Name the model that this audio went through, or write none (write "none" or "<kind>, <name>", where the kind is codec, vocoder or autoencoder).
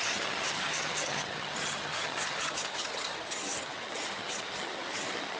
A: vocoder, HiFi-GAN